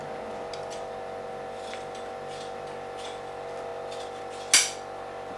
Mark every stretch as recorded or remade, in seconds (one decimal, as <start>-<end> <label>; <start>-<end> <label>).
0.0-5.4 recorded